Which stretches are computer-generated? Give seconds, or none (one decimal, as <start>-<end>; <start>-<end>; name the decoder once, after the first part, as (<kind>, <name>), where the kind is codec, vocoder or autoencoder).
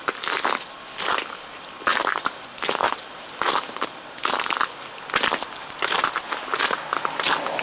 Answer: none